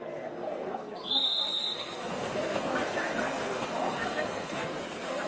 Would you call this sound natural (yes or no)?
no